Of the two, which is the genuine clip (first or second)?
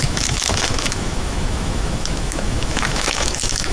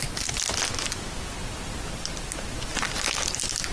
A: second